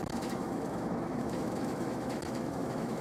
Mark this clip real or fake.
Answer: fake